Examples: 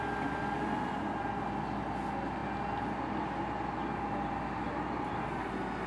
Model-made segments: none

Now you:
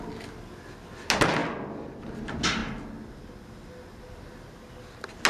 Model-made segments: none

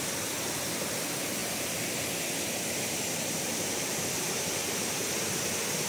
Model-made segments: 0.0-1.4 (vocoder, BigVGAN v2); 4.8-5.9

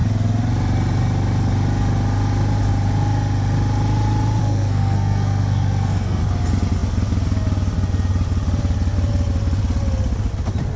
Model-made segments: 4.4-6.2 (codec, SNAC)

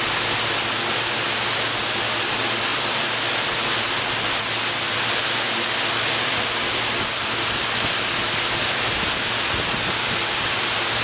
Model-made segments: none

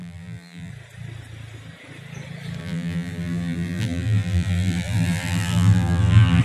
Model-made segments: 0.0-0.7 (vocoder, BigVGAN v2); 2.6-6.4

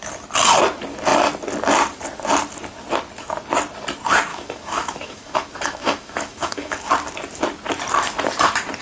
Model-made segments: 4.3-6.9 (autoencoder, DAC-VAE)